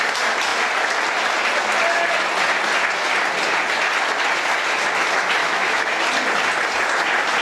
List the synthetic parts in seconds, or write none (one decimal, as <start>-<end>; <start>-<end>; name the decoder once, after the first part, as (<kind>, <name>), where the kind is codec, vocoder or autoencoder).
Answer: 5.4-6.0 (autoencoder, DAC-VAE)